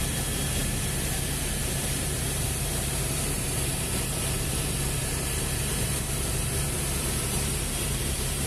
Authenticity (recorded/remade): remade